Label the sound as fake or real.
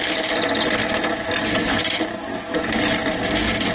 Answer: real